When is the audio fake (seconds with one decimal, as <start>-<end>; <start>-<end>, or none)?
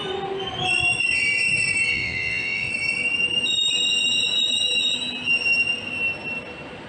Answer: 1.9-2.7